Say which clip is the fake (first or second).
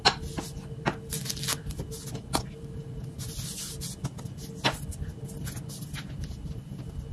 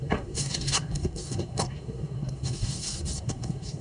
second